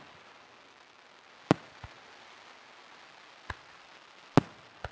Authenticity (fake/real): real